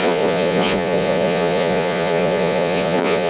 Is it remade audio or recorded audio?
remade